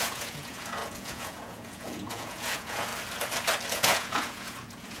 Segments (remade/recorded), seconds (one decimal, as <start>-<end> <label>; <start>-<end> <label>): 0.0-2.9 remade; 2.9-3.7 recorded; 3.7-5.0 remade